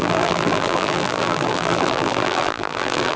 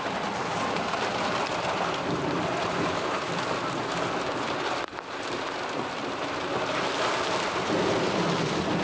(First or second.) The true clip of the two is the second